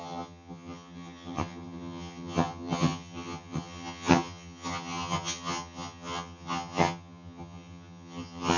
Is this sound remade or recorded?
remade